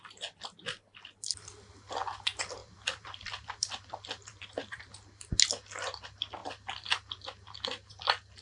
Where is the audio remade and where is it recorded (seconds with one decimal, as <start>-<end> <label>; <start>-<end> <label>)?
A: 0.0-2.6 recorded; 2.6-5.3 remade; 5.3-8.4 recorded